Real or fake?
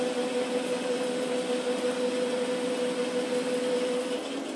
real